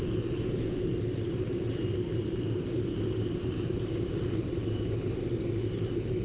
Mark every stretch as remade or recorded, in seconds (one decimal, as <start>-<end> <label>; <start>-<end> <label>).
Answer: 0.0-6.2 recorded